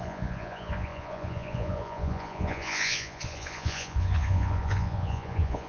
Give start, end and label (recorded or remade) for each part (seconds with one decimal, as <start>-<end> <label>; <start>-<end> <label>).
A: 0.0-5.7 remade